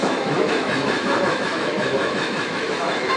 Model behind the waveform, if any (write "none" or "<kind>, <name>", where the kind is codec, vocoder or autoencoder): autoencoder, DAC-VAE